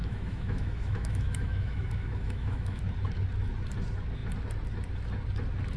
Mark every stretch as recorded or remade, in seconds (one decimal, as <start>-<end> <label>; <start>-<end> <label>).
0.0-2.8 remade; 2.8-5.8 recorded